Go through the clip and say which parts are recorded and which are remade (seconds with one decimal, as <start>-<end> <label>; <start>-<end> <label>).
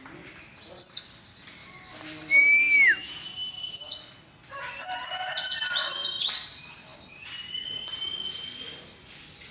0.0-9.5 recorded